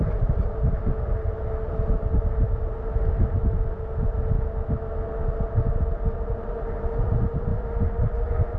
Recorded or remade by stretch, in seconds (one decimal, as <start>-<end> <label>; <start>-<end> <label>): 0.0-8.6 recorded